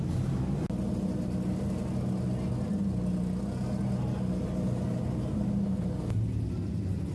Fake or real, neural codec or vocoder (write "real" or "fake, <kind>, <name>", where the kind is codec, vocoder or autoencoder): real